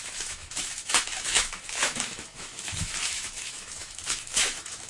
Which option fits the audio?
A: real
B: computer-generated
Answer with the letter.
B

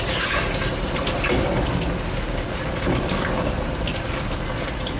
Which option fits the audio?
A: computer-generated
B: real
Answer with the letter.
B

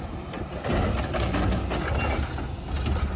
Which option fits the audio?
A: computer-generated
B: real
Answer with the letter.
B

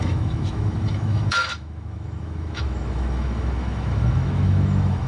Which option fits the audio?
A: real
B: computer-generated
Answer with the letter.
B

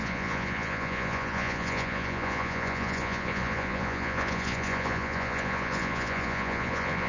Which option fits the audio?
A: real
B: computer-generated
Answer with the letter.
B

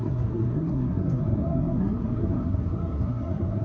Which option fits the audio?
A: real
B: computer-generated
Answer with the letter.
B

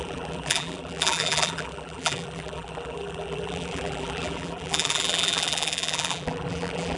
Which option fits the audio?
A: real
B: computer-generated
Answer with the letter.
B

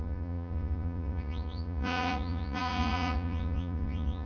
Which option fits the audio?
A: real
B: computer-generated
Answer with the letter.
B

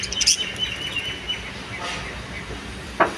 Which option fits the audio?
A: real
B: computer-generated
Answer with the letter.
A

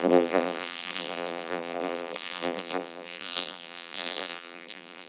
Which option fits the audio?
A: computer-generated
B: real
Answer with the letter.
A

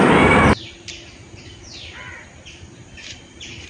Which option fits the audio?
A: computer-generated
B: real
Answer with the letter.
A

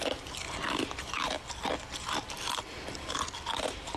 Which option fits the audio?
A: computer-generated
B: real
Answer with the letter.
B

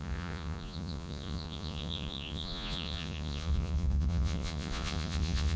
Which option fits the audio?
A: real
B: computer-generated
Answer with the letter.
B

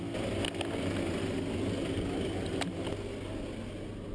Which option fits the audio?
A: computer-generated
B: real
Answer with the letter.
B